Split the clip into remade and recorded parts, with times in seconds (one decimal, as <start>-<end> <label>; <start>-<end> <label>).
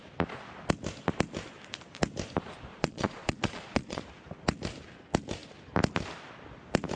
0.0-2.7 recorded; 2.7-4.0 remade; 4.0-7.0 recorded